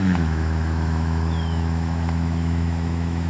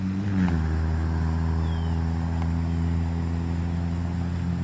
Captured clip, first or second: second